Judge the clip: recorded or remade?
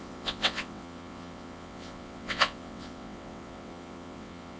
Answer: remade